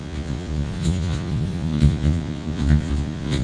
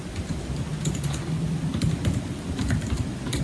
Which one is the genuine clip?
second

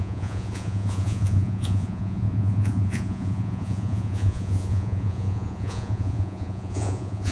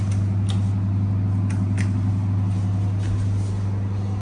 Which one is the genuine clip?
second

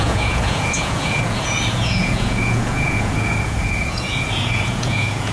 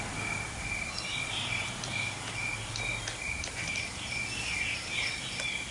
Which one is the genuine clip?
second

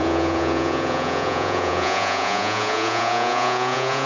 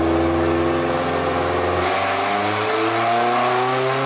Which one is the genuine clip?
second